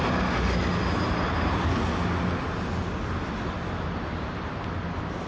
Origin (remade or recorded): recorded